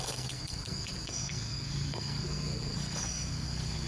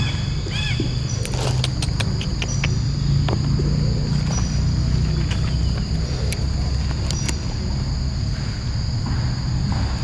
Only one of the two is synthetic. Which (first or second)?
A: first